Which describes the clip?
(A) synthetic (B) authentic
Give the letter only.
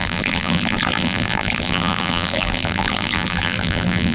A